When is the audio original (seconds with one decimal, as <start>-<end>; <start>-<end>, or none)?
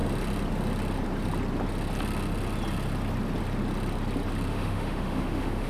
0.0-4.5